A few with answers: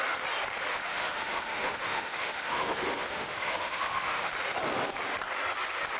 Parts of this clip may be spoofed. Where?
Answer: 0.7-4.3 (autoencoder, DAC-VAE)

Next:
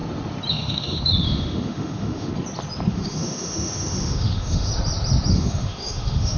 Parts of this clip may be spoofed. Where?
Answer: 0.5-2.3 (autoencoder, DAC-VAE); 2.9-4.7; 5.3-6.4

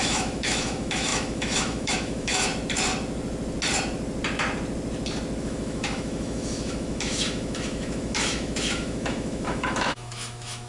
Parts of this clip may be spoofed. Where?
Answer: 0.0-2.5 (autoencoder, DAC-VAE); 5.4-10.7

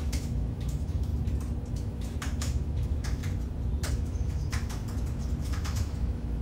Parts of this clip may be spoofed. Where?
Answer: 0.0-1.1 (autoencoder, DAC-VAE); 1.7-3.2; 3.9-4.8; 5.4-6.4

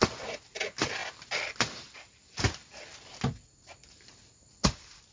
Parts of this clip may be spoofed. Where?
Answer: none